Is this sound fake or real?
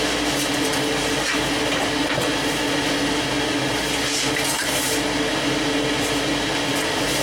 real